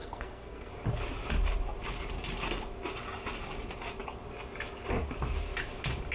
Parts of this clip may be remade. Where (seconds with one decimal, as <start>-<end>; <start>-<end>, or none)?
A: 0.0-0.7